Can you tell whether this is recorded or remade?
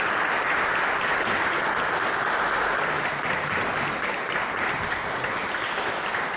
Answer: recorded